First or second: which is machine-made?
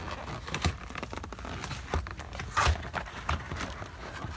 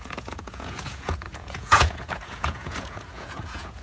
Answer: second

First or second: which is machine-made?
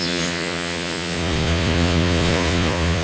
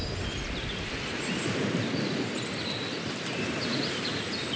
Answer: first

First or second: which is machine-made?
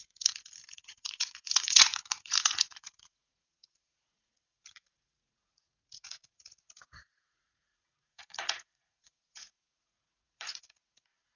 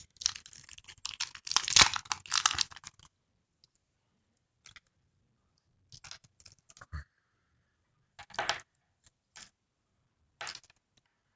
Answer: first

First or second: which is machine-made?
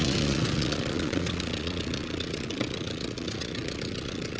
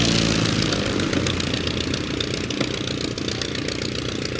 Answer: first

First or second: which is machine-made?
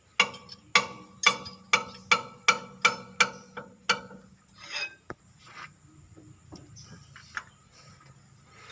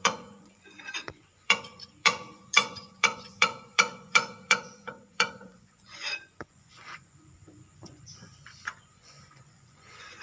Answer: second